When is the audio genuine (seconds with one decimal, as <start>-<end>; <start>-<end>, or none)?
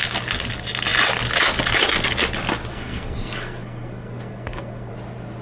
0.0-2.7; 4.9-5.4